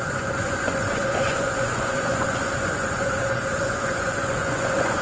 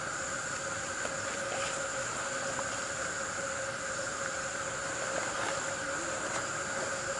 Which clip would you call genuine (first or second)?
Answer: second